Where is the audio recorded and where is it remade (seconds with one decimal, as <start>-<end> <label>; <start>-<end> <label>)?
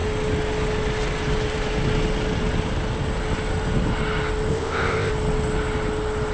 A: 0.0-4.5 recorded; 4.5-5.1 remade; 5.1-6.3 recorded